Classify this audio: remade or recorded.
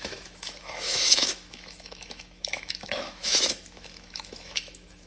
remade